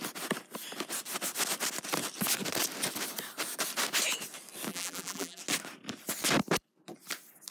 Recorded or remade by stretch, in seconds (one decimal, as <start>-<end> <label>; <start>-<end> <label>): 0.0-4.7 recorded; 4.7-5.4 remade; 5.4-7.5 recorded